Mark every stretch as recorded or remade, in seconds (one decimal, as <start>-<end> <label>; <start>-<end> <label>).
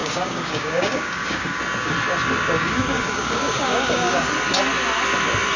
0.0-1.6 remade; 1.6-2.6 recorded; 2.6-4.3 remade; 4.3-5.6 recorded